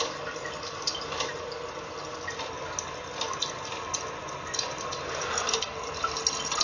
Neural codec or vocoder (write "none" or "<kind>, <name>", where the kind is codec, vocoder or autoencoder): none